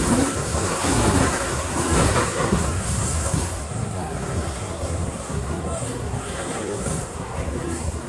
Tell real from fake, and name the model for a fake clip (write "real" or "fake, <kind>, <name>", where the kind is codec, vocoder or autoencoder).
fake, codec, SNAC